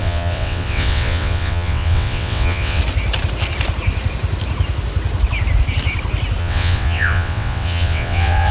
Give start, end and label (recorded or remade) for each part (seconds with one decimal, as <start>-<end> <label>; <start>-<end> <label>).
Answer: 0.0-2.8 remade; 2.8-6.4 recorded; 6.4-8.5 remade